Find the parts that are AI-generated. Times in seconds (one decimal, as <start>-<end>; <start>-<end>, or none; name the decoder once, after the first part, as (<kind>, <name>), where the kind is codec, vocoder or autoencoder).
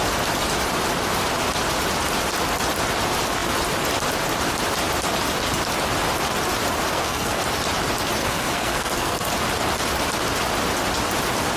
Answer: 6.9-7.4 (codec, SNAC); 8.2-9.3